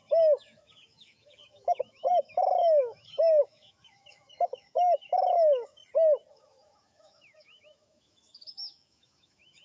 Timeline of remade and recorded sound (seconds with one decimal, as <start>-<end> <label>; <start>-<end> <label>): 0.0-5.8 remade; 5.8-6.3 recorded; 6.3-9.6 remade